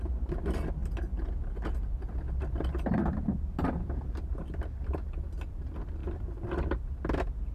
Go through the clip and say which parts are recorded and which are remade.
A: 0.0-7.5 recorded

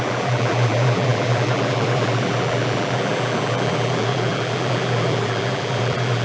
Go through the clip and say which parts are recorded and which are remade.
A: 0.0-6.2 remade

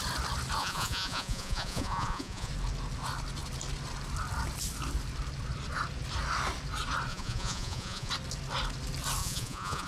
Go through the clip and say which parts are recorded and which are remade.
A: 0.0-0.6 recorded; 0.6-2.5 remade; 2.5-7.1 recorded; 7.1-8.1 remade; 8.1-9.2 recorded; 9.2-9.9 remade

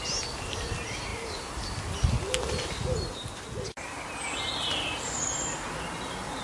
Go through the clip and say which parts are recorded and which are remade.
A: 0.0-6.4 recorded

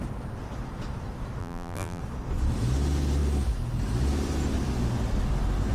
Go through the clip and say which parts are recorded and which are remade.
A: 0.0-1.4 recorded; 1.4-2.0 remade; 2.0-5.7 recorded